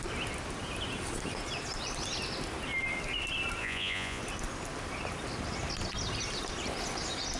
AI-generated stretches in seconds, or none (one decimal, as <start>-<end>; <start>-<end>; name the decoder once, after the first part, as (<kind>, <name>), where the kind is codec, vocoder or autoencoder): 3.6-4.2 (vocoder, Vocos)